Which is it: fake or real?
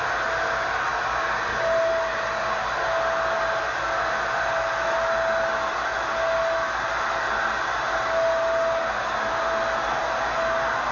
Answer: real